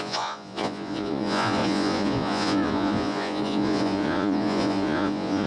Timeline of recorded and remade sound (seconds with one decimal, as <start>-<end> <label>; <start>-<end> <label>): 0.0-5.5 remade